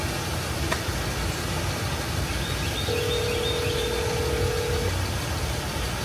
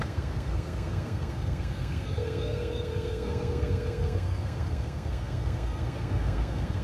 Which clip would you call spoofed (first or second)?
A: second